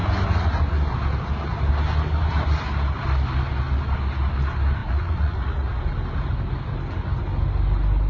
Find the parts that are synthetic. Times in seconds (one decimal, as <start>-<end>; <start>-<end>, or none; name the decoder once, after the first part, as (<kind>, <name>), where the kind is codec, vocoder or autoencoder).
4.8-5.8 (vocoder, Vocos)

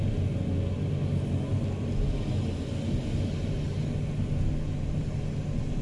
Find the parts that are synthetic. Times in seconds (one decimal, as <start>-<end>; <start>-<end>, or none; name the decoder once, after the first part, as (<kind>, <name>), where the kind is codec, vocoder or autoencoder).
none